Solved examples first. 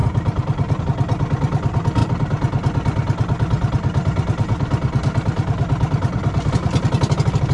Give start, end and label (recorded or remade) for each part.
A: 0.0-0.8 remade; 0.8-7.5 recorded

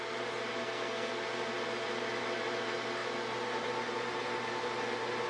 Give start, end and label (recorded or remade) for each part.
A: 0.0-0.6 recorded; 0.6-1.1 remade; 1.1-5.3 recorded

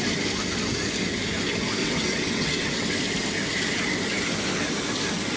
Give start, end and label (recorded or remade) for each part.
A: 0.0-1.8 recorded; 1.8-2.9 remade; 2.9-5.4 recorded

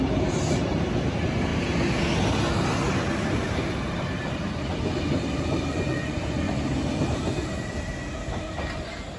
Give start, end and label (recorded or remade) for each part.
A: 0.0-5.7 recorded; 5.7-6.5 remade; 6.5-9.2 recorded

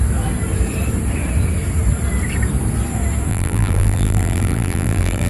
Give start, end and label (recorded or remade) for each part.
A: 0.0-3.3 recorded; 3.3-5.3 remade

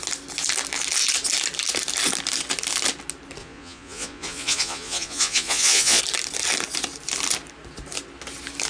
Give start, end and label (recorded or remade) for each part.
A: 0.0-3.4 recorded; 3.4-6.0 remade; 6.0-8.7 recorded

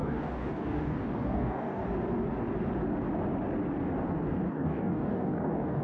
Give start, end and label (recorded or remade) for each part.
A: 0.0-1.8 remade; 1.8-4.5 recorded; 4.5-5.8 remade

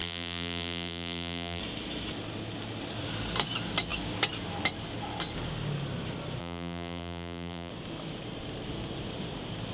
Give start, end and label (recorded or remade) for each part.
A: 0.0-1.6 remade; 1.6-6.4 recorded; 6.4-7.7 remade; 7.7-9.7 recorded